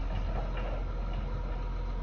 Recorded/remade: recorded